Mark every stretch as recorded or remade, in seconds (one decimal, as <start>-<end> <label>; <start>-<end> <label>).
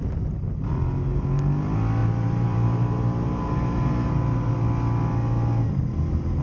0.0-2.0 recorded; 2.0-4.5 remade; 4.5-6.4 recorded